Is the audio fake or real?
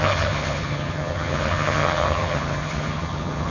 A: fake